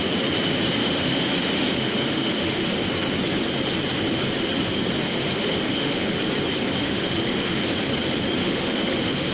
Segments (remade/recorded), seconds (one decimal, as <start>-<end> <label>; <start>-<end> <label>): 0.0-0.8 recorded; 0.8-2.8 remade; 2.8-5.0 recorded; 5.0-6.1 remade; 6.1-6.8 recorded; 6.8-7.6 remade; 7.6-8.4 recorded; 8.4-9.3 remade